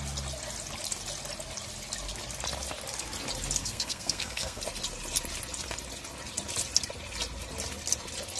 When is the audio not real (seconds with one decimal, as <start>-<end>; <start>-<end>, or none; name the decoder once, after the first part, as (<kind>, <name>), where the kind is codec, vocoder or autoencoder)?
3.6-4.6 (codec, SNAC)